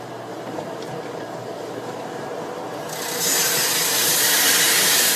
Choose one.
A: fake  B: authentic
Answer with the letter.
A